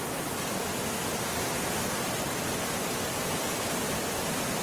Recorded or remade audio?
recorded